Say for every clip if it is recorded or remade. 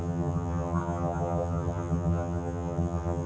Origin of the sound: remade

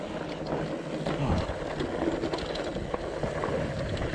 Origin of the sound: recorded